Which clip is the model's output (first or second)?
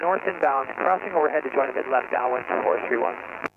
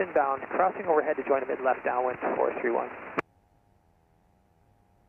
first